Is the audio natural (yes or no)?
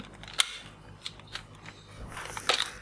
yes